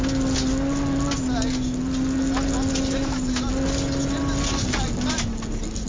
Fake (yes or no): no